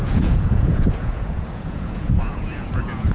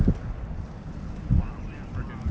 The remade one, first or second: first